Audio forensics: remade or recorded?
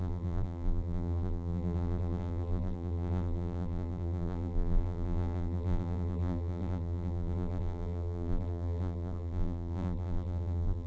remade